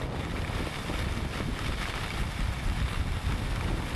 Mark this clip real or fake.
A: real